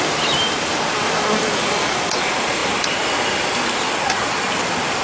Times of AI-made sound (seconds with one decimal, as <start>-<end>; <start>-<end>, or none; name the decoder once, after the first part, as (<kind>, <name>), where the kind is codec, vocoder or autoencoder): none